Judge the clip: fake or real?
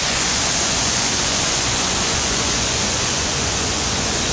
fake